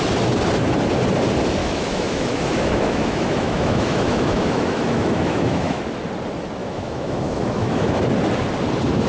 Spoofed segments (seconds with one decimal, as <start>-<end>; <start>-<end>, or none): 1.6-5.8; 6.6-8.0